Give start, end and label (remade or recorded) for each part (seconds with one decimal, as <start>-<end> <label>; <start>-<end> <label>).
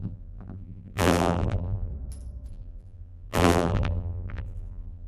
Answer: 0.0-1.9 remade; 1.9-2.5 recorded; 2.5-5.1 remade